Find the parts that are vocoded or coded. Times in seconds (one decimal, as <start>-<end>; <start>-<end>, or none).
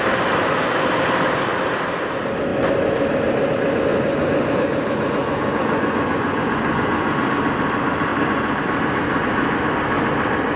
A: 3.9-7.1; 8.1-8.6